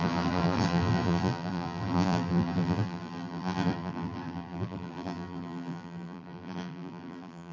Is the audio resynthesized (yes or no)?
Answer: yes